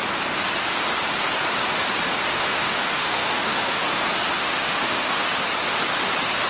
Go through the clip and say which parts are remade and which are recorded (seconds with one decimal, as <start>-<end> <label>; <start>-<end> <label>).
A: 0.0-2.3 recorded; 2.3-4.0 remade; 4.0-4.4 recorded; 4.4-5.3 remade; 5.3-6.5 recorded